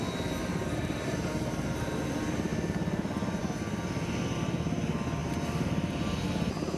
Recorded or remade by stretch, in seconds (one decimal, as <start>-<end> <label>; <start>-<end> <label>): 0.0-0.4 recorded; 0.4-1.3 remade; 1.3-6.8 recorded